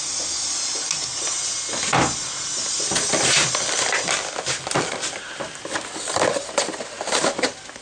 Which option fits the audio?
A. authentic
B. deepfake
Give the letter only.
A